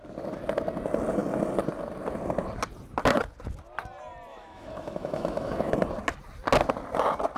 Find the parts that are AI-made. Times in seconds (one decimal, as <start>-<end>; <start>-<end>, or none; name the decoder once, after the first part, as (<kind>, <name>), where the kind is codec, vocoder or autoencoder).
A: 4.3-5.7 (autoencoder, DAC-VAE)